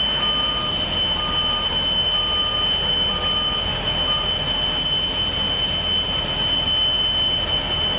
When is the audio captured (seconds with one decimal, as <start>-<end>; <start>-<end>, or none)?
0.0-8.0